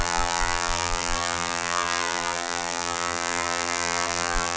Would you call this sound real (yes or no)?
no